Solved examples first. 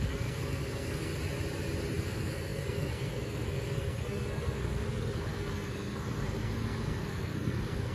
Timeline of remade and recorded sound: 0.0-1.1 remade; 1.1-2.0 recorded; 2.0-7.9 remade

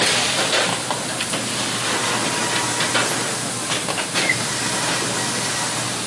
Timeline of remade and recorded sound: 0.0-6.1 recorded

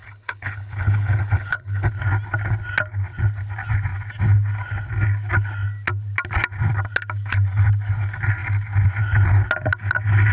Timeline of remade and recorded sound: 0.0-1.9 remade; 1.9-10.3 recorded